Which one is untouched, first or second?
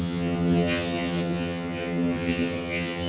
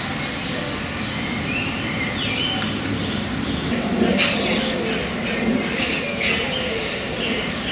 second